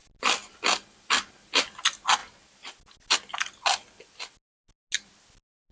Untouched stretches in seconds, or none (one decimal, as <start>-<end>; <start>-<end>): 0.0-5.7